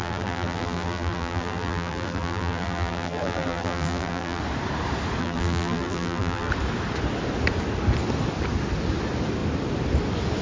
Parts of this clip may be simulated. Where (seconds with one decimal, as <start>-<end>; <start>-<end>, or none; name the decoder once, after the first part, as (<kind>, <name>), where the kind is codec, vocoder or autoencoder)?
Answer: 0.0-4.4 (vocoder, BigVGAN v2); 5.2-6.5